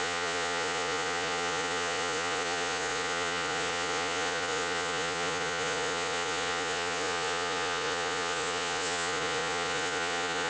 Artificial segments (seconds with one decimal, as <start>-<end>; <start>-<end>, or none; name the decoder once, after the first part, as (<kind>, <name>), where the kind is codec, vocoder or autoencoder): 0.0-10.5 (vocoder, Vocos)